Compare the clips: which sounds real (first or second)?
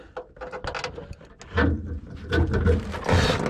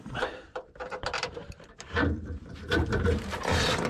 first